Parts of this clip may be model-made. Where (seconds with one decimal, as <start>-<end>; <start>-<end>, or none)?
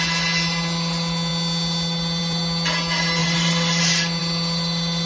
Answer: none